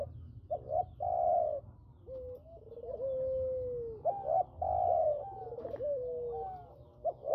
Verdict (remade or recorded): recorded